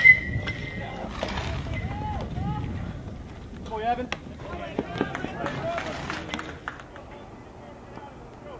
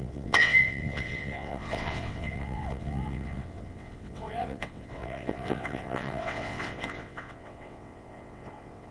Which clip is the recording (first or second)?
first